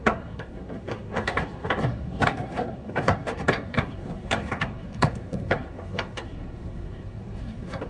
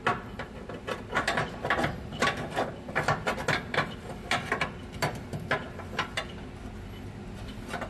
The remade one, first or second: first